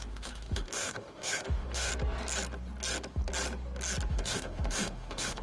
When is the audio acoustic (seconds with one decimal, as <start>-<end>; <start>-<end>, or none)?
1.9-4.1